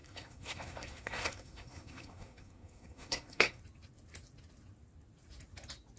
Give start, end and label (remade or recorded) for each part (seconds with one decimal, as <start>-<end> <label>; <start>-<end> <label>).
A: 0.0-3.6 remade; 3.6-6.0 recorded

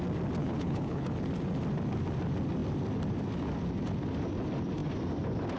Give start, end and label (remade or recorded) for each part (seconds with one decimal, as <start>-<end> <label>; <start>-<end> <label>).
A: 0.0-0.4 recorded; 0.4-1.1 remade; 1.1-5.6 recorded